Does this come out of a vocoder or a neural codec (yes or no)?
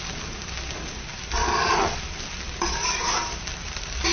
no